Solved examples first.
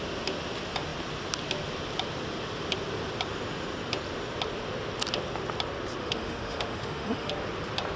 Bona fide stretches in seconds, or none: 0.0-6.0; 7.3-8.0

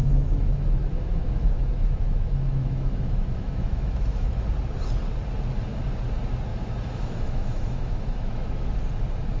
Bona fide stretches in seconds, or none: 4.4-6.5; 8.8-9.4

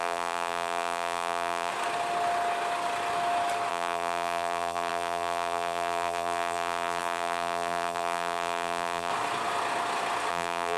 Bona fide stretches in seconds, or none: 1.7-3.7; 9.1-10.3

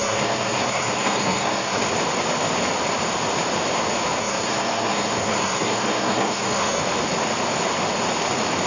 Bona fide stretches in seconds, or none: 1.8-4.2; 6.8-8.7

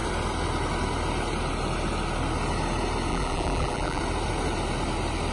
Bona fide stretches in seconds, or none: 0.0-3.1; 4.0-5.3

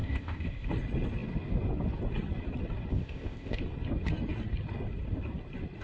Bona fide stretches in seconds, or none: 0.7-2.9; 3.6-5.8

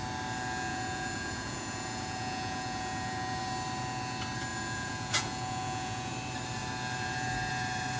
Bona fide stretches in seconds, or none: 0.0-0.7; 3.4-4.5; 6.1-8.0